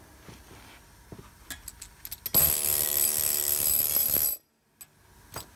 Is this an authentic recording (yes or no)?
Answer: yes